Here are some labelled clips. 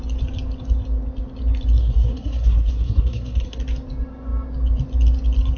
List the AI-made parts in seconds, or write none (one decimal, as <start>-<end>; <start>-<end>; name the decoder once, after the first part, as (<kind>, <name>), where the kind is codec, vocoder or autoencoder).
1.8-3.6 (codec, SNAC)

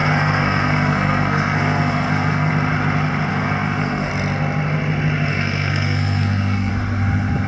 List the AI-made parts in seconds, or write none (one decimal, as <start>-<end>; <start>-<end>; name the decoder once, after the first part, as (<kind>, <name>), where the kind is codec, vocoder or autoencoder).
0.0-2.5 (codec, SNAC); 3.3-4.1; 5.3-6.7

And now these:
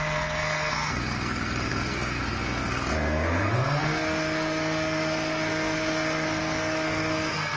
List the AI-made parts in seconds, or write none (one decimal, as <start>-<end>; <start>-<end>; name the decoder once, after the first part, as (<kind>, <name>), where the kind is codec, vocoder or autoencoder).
0.0-7.6 (codec, SNAC)

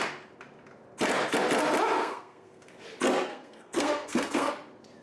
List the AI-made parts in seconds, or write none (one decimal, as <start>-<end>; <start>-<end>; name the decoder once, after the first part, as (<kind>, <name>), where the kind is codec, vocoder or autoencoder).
2.0-2.7 (codec, SNAC); 3.3-4.5

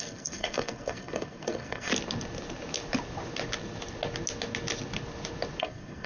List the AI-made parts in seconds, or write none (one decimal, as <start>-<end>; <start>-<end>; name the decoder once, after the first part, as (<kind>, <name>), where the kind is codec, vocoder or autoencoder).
0.0-1.9 (codec, SNAC); 5.6-6.1

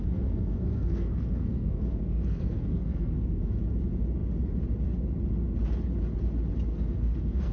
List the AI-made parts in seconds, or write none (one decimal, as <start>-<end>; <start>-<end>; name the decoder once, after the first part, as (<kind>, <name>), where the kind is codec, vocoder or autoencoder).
0.0-3.5 (codec, SNAC); 6.7-7.5